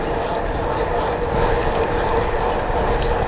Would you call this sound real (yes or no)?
yes